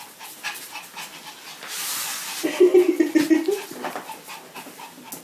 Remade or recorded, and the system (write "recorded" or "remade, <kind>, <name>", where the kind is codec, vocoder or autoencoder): recorded